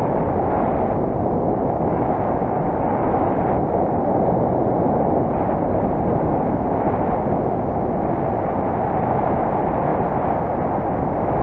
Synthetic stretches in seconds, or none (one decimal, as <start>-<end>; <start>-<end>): none